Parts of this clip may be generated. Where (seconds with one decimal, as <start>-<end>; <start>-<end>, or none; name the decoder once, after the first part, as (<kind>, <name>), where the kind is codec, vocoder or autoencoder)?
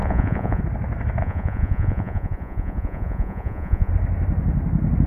0.0-0.6 (vocoder, Vocos); 1.2-3.9